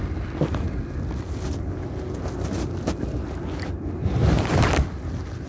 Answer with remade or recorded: recorded